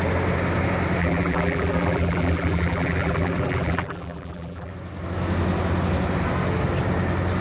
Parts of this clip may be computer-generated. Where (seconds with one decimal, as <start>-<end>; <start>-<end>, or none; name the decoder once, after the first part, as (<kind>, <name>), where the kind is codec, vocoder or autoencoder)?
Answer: 1.0-4.7 (vocoder, BigVGAN v2)